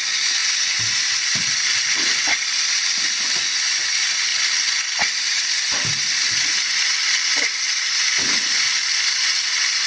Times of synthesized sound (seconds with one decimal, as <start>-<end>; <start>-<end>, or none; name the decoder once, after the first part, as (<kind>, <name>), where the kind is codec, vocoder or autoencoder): none